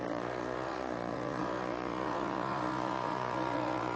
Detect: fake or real fake